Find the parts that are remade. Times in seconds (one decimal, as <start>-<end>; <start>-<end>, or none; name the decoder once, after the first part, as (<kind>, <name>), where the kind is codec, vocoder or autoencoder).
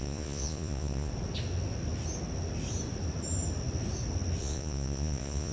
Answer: 0.0-1.1 (vocoder, Vocos); 4.4-5.5